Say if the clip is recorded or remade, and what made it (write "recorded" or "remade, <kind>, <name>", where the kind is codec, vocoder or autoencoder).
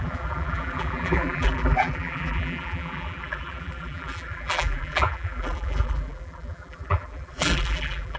remade, vocoder, BigVGAN v2